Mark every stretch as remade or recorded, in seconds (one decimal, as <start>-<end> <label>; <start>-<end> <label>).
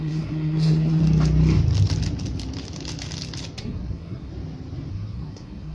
0.0-1.0 remade; 1.0-3.6 recorded; 3.6-4.3 remade; 4.3-4.9 recorded; 4.9-5.7 remade